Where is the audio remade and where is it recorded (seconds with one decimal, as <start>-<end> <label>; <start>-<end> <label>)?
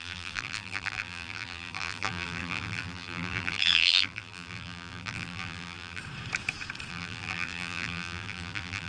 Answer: 0.0-6.0 remade; 6.0-6.9 recorded; 6.9-8.9 remade